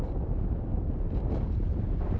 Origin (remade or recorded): recorded